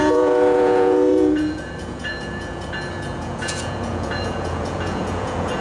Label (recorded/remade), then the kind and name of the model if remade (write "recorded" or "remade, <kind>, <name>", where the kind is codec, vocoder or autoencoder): remade, vocoder, Vocos